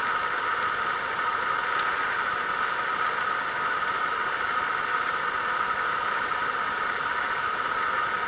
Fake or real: real